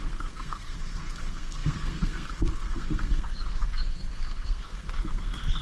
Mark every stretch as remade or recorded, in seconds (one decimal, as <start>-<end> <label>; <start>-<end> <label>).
0.0-5.6 remade